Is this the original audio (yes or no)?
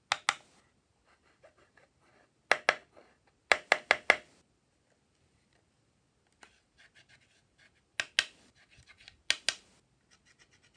yes